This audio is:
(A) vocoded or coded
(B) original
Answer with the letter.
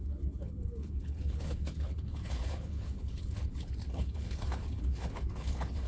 A